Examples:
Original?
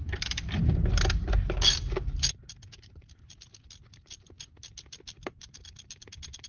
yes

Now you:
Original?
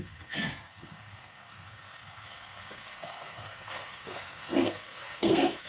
no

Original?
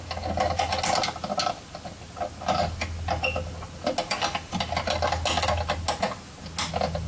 yes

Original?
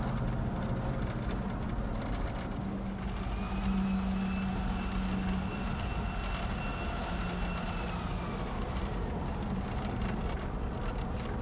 yes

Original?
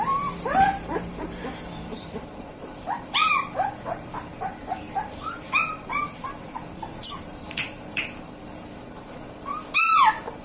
no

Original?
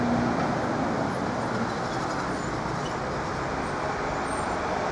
yes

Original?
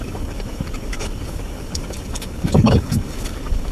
no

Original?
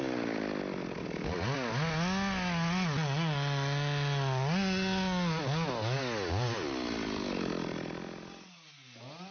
yes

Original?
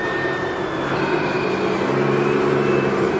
yes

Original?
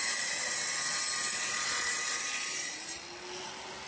yes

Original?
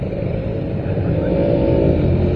no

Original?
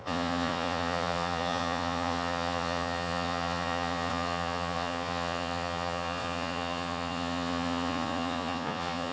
no